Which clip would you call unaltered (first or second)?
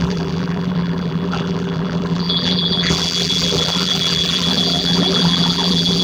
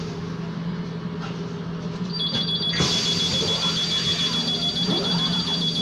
second